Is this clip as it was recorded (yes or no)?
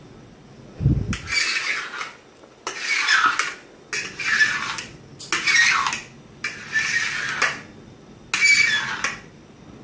yes